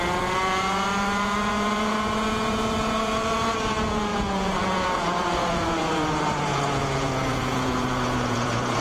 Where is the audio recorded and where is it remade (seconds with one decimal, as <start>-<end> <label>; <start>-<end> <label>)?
0.0-8.8 remade